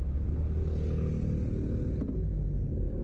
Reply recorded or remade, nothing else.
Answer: recorded